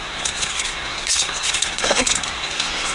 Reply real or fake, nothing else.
fake